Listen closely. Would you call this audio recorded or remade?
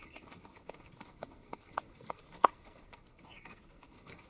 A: remade